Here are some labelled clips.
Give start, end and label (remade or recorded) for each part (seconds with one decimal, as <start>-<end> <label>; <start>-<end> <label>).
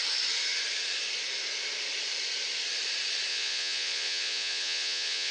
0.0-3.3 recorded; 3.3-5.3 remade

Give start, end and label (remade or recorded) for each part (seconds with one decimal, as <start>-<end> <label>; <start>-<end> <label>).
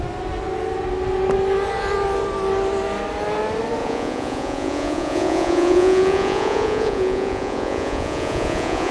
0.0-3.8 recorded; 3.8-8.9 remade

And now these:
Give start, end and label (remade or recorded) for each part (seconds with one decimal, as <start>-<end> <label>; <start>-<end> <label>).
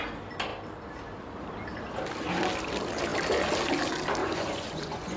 0.0-4.2 recorded; 4.2-5.2 remade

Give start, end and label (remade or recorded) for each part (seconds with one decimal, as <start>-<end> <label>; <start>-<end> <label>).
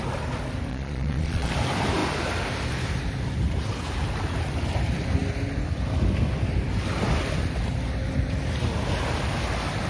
0.0-0.7 recorded; 0.7-1.5 remade; 1.5-9.9 recorded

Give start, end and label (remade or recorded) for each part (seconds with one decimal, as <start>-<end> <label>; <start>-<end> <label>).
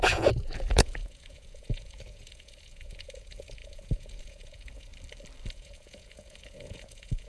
0.0-4.9 remade; 4.9-5.5 recorded; 5.5-7.3 remade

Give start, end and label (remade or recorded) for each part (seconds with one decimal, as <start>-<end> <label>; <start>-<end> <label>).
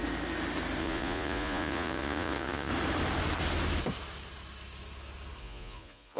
0.0-0.8 recorded; 0.8-2.7 remade; 2.7-5.4 recorded; 5.4-6.2 remade